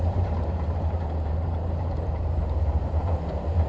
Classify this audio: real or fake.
fake